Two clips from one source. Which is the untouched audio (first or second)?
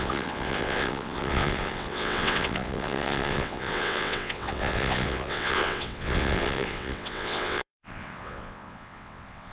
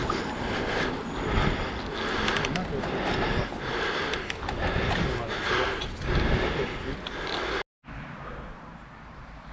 second